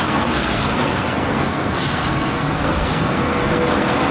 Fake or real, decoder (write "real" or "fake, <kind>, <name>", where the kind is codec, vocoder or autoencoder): fake, codec, SNAC